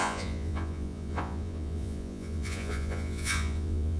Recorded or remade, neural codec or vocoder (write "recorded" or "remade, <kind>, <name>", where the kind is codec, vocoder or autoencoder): remade, vocoder, Vocos